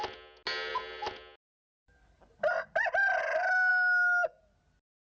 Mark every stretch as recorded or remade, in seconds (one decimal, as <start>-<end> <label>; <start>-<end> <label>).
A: 0.0-3.7 recorded; 3.7-4.4 remade; 4.4-5.1 recorded

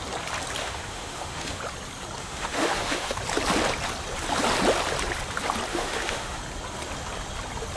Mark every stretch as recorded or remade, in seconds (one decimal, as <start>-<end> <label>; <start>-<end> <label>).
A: 0.0-0.6 recorded; 0.6-1.6 remade; 1.6-2.2 recorded; 2.2-3.2 remade; 3.2-5.7 recorded; 5.7-6.4 remade; 6.4-7.8 recorded

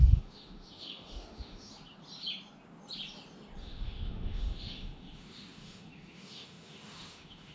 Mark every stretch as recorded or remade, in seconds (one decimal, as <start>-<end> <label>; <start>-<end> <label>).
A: 0.0-1.7 remade; 1.7-3.6 recorded; 3.6-7.5 remade